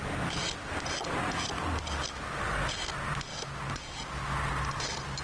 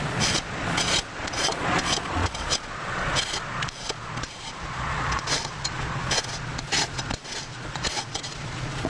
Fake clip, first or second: second